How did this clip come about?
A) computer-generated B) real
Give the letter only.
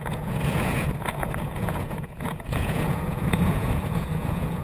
A